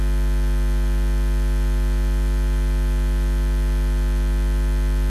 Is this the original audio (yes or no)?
yes